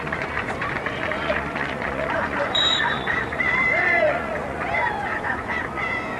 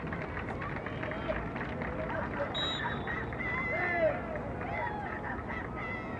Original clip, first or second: second